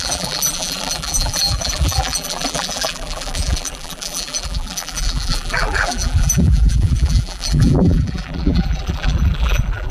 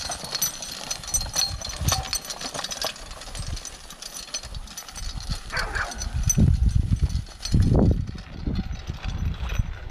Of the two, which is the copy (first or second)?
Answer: first